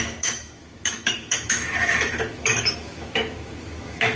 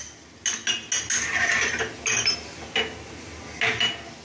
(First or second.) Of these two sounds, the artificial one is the first